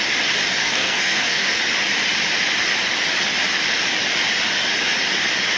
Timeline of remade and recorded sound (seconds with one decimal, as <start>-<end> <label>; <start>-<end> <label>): 0.0-0.6 recorded; 0.6-1.6 remade; 1.6-5.6 recorded